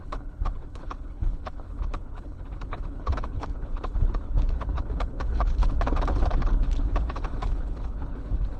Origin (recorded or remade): remade